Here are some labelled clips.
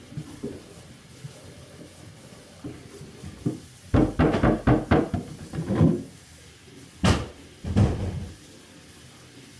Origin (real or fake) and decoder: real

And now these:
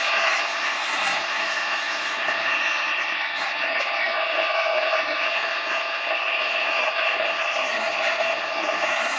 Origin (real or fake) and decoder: fake, codec, SNAC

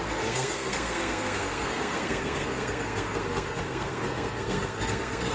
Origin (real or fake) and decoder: fake, codec, SNAC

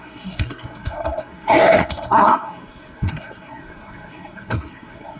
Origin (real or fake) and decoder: fake, codec, SNAC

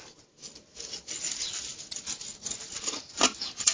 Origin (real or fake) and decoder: real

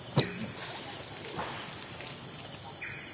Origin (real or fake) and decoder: real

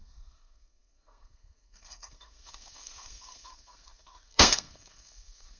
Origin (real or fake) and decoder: fake, codec, SNAC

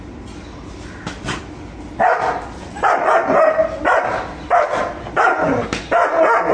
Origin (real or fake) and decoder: real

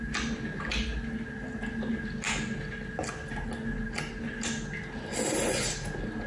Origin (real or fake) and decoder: real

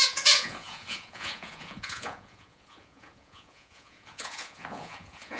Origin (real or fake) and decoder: fake, vocoder, Vocos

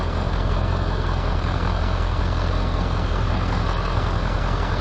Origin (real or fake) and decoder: fake, codec, SNAC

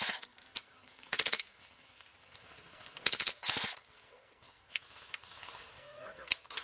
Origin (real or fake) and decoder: fake, codec, SNAC